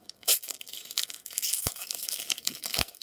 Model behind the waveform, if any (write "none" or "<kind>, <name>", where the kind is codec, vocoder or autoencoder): codec, SNAC